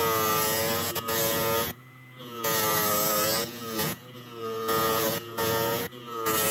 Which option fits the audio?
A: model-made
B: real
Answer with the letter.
A